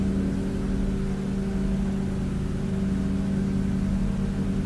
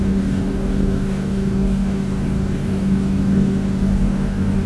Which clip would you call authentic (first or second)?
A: first